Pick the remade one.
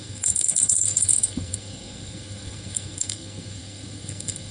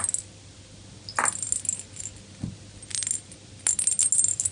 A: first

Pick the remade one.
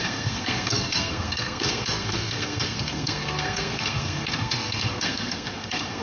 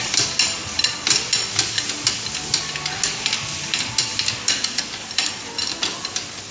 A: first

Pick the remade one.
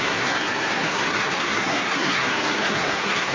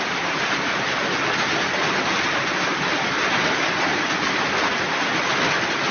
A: first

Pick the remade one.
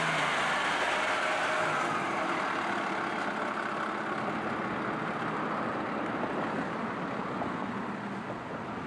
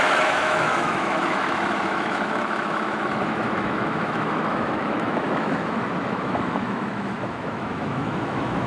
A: second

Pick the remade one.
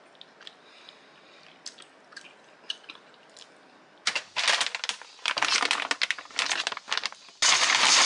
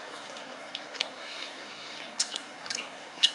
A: second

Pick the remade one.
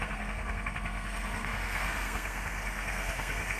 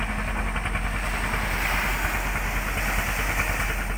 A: first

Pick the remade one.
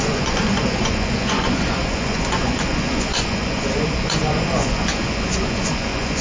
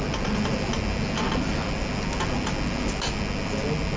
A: first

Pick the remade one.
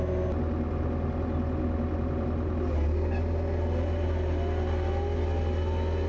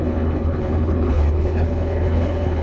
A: second